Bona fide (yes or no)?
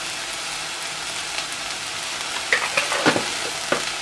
yes